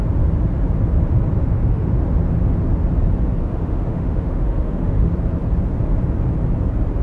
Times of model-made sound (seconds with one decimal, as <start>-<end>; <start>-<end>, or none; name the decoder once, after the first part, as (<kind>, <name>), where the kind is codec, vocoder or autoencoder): 1.4-2.0 (autoencoder, DAC-VAE); 3.4-5.1